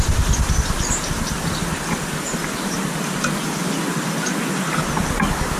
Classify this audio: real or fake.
real